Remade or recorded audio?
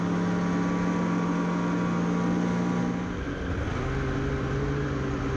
recorded